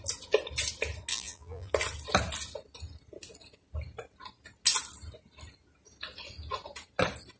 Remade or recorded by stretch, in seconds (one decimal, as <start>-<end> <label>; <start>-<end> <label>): 0.0-1.1 recorded; 1.1-1.7 remade; 1.7-7.4 recorded